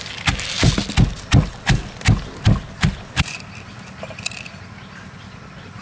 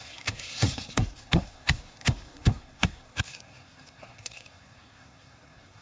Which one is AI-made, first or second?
second